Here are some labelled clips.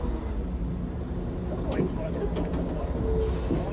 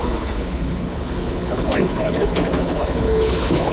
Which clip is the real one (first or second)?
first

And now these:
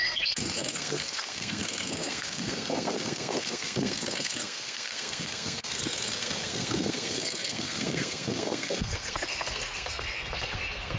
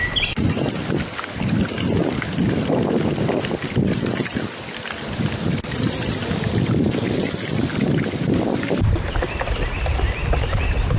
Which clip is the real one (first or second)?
second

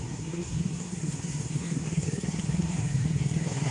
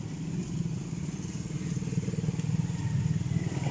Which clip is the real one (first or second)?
second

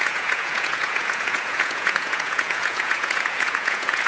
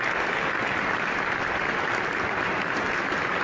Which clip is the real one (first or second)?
second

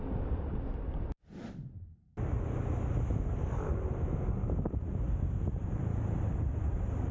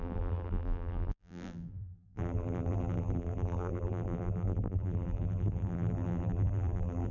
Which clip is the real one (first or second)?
first